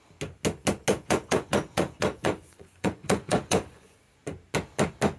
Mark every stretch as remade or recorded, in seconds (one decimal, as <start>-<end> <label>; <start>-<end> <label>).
0.0-0.9 recorded; 0.9-4.0 remade; 4.0-5.2 recorded